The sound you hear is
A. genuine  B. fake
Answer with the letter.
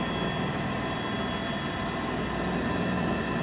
A